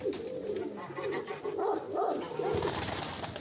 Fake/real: real